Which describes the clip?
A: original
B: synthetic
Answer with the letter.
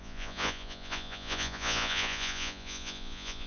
B